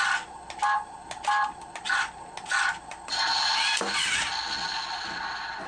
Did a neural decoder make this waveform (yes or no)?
no